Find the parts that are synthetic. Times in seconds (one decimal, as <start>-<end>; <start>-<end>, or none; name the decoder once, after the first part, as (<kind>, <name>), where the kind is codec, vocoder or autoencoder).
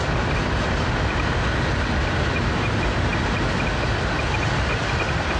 none